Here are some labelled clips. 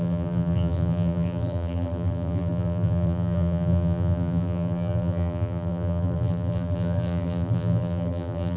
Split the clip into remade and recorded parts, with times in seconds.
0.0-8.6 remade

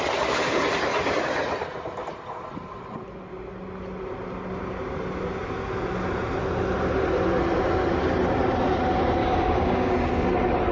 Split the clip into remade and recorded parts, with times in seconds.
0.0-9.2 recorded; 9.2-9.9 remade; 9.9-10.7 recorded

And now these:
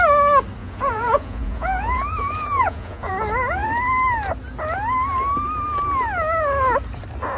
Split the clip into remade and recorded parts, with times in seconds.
0.0-0.6 recorded; 0.6-3.1 remade; 3.1-7.4 recorded

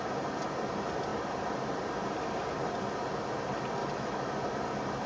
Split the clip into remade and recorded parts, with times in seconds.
0.0-3.8 recorded; 3.8-4.4 remade; 4.4-5.1 recorded

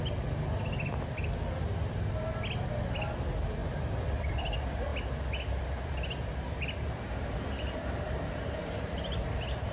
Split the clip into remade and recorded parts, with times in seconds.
0.0-6.3 recorded; 6.3-9.7 remade

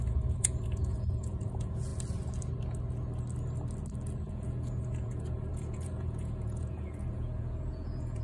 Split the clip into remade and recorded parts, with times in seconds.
0.0-1.9 remade; 1.9-4.3 recorded; 4.3-8.2 remade